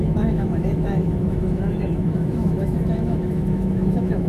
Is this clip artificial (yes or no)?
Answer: yes